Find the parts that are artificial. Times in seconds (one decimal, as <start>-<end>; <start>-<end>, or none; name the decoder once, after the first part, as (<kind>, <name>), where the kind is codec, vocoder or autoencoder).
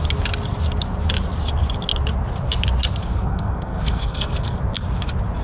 2.9-4.6 (codec, SNAC)